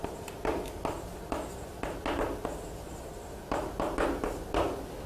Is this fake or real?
real